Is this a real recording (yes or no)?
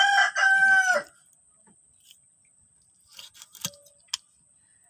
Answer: yes